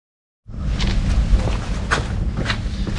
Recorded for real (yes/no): yes